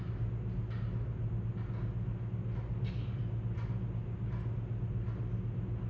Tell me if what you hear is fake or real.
real